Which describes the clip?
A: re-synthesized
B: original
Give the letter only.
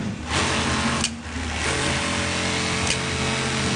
B